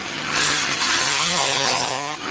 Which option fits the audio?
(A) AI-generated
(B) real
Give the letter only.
A